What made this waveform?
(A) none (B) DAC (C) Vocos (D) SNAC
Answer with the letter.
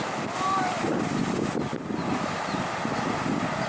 A